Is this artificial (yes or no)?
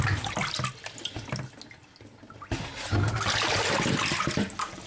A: no